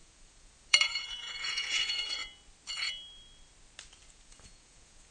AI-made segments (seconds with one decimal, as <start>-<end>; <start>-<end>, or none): 0.0-2.2; 4.1-5.1